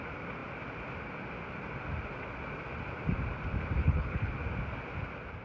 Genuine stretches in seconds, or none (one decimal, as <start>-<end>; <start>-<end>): 0.0-3.8; 4.3-5.4